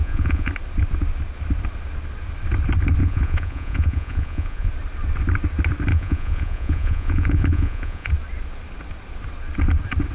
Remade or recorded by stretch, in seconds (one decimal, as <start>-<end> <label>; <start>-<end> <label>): 0.0-0.5 remade; 0.5-3.0 recorded; 3.0-4.7 remade; 4.7-5.9 recorded; 5.9-8.1 remade; 8.1-10.1 recorded